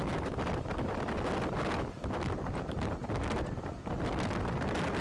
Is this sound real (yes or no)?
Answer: yes